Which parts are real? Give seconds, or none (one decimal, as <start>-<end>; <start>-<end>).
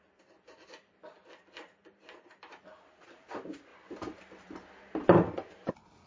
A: 0.0-6.1